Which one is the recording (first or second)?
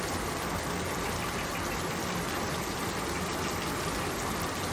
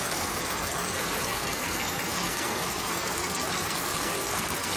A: first